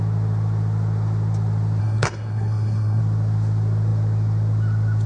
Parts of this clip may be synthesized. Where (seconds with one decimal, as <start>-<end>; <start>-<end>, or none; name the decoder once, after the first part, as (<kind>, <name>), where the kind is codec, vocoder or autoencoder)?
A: 1.8-3.0 (codec, SNAC)